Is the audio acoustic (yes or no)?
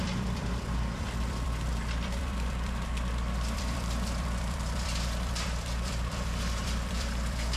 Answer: no